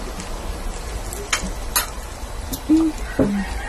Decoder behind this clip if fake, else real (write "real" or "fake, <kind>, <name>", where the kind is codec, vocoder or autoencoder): real